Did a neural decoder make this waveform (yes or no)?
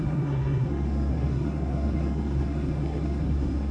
yes